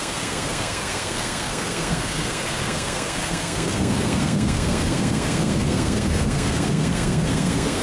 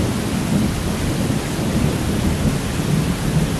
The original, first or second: second